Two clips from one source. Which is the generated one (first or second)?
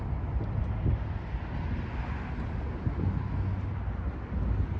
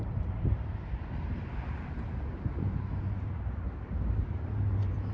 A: second